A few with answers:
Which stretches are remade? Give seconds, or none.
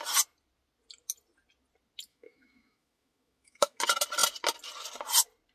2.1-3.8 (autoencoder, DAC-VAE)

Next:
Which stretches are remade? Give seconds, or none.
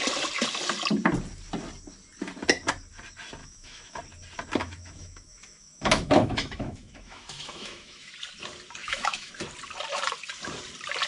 3.4-4.0 (autoencoder, DAC-VAE); 4.6-8.1; 8.8-9.3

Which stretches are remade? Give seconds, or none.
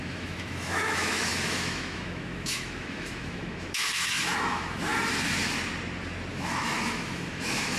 0.0-4.9 (autoencoder, DAC-VAE); 6.3-7.8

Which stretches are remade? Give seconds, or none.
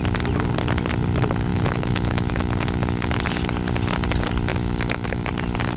1.5-3.2 (autoencoder, DAC-VAE); 4.5-5.3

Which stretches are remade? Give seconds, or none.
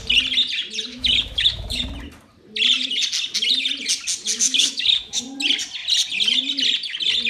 0.9-1.8 (autoencoder, DAC-VAE); 4.4-5.2